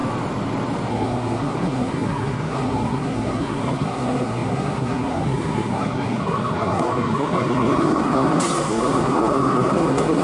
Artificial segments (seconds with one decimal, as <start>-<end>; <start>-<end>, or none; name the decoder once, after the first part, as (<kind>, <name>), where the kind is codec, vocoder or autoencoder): 0.9-10.2 (codec, SNAC)